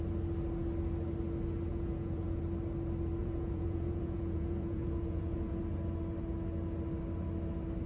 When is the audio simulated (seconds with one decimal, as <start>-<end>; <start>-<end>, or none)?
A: 1.7-2.4; 3.2-5.6